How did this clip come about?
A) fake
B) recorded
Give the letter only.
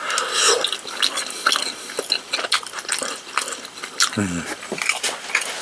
B